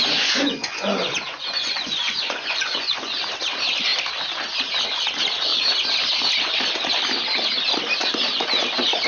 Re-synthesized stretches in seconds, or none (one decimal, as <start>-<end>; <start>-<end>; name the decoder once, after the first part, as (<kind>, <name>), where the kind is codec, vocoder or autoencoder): 0.0-3.1 (vocoder, Vocos)